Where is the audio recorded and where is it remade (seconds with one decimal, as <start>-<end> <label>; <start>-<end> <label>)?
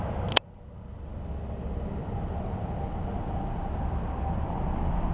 0.0-5.1 recorded